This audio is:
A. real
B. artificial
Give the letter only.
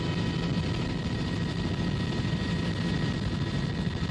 A